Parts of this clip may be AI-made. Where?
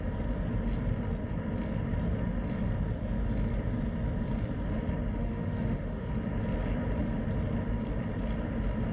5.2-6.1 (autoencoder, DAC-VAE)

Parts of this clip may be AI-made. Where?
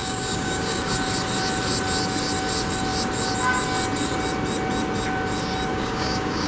0.0-0.9 (codec, DAC); 5.7-6.5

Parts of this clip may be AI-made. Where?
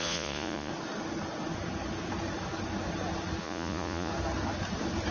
0.0-0.7 (vocoder, Vocos); 3.4-4.1